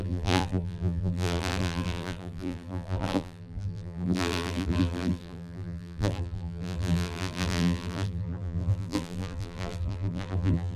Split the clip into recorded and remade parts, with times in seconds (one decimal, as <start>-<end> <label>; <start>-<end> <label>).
0.0-10.8 remade

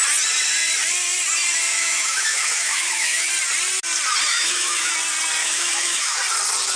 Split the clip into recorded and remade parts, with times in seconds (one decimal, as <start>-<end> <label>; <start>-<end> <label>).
0.0-1.7 recorded; 1.7-3.3 remade; 3.3-4.3 recorded; 4.3-4.9 remade; 4.9-5.4 recorded; 5.4-6.2 remade; 6.2-6.8 recorded

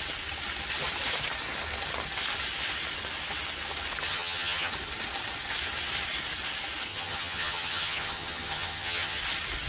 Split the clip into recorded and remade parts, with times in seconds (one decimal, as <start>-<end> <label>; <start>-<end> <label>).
0.0-4.1 recorded; 4.1-4.7 remade; 4.7-6.9 recorded; 6.9-9.2 remade; 9.2-9.7 recorded

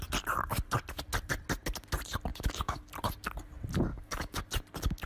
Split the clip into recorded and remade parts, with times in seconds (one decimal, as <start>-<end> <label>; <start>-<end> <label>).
0.0-2.3 recorded; 2.3-2.9 remade; 2.9-3.9 recorded; 3.9-4.4 remade; 4.4-5.1 recorded

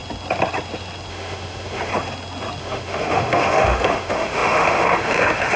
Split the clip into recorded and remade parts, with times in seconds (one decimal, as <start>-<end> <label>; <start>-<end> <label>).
0.0-1.1 recorded; 1.1-1.9 remade; 1.9-2.6 recorded; 2.6-5.6 remade

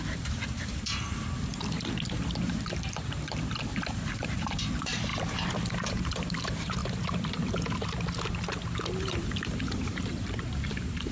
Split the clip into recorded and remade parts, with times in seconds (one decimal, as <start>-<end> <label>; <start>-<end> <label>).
0.0-1.5 remade; 1.5-2.4 recorded; 2.4-5.1 remade; 5.1-5.9 recorded; 5.9-6.8 remade; 6.8-9.0 recorded; 9.0-11.1 remade

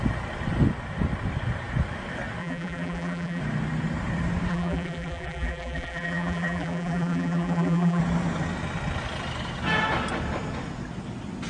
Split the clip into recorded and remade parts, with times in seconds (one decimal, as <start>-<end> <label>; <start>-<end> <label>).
0.0-2.4 recorded; 2.4-3.4 remade; 3.4-4.5 recorded; 4.5-8.0 remade; 8.0-11.5 recorded